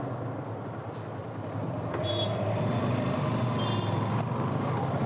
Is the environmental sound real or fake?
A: real